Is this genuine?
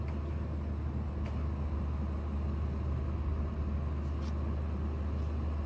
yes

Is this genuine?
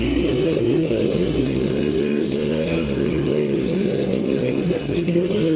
no